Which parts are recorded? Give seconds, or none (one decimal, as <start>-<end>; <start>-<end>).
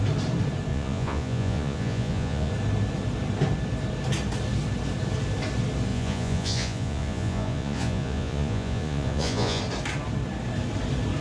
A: 0.0-0.7; 2.5-5.9; 9.6-11.2